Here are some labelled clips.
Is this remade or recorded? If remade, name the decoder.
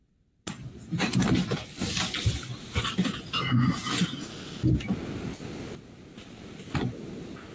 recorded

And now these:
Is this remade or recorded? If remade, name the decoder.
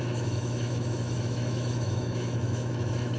remade, autoencoder, DAC-VAE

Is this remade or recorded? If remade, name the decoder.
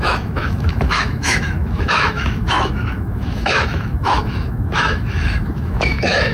remade, autoencoder, DAC-VAE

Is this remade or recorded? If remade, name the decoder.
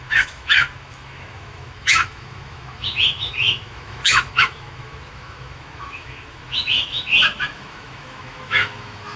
remade, autoencoder, DAC-VAE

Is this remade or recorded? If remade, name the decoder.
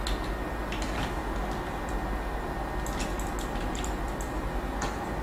recorded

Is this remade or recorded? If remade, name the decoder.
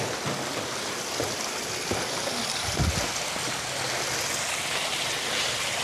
recorded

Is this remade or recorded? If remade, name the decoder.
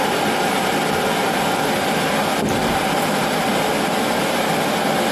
recorded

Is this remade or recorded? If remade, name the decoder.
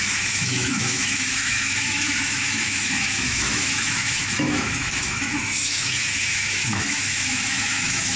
remade, autoencoder, DAC-VAE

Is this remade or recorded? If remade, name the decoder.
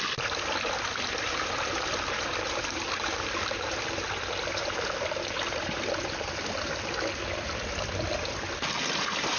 recorded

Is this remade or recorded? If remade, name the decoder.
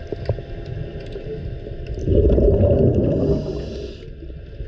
recorded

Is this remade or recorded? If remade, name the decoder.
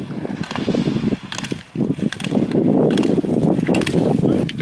recorded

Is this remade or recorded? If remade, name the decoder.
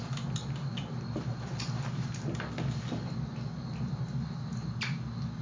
recorded